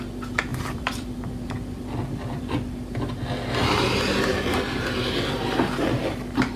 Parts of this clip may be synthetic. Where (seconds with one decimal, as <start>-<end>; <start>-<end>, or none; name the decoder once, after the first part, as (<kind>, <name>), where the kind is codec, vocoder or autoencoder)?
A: 0.5-2.7 (vocoder, BigVGAN v2)